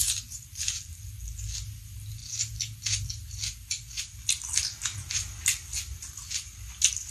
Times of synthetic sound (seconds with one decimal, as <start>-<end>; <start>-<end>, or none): none